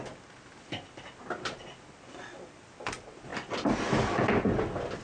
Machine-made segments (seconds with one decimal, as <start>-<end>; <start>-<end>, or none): none